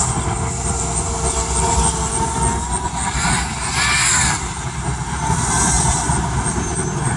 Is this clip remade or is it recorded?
recorded